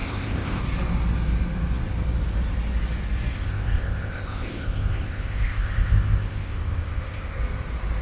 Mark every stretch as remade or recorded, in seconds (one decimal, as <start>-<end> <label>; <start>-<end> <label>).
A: 0.0-0.6 remade; 0.6-3.3 recorded; 3.3-7.4 remade; 7.4-8.0 recorded